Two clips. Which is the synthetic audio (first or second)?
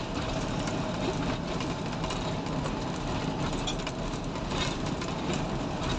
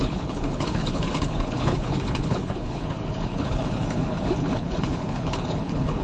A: second